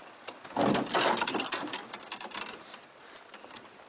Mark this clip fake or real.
real